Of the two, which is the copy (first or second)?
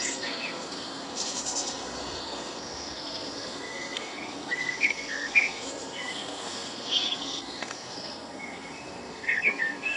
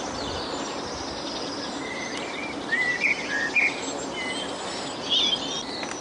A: first